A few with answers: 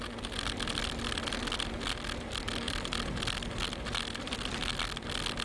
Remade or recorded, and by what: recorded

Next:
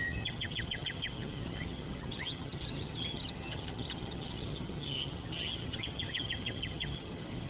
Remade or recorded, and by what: remade, vocoder, HiFi-GAN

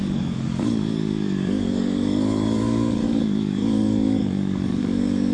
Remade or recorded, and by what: remade, codec, DAC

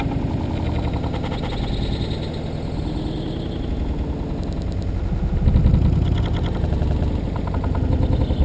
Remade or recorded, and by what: recorded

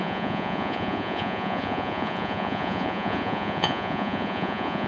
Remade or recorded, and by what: remade, vocoder, Vocos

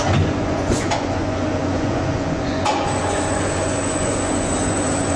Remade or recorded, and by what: remade, vocoder, Vocos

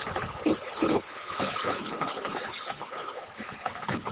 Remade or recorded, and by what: remade, codec, HILCodec